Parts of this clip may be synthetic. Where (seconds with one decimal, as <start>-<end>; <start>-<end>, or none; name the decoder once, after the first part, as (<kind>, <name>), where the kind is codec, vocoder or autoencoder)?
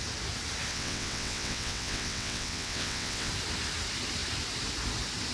0.7-3.3 (vocoder, WaveNeXt)